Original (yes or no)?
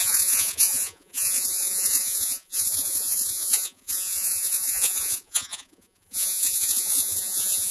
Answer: no